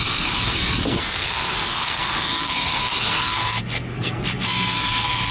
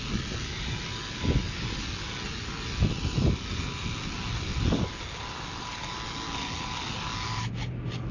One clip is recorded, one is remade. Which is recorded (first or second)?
second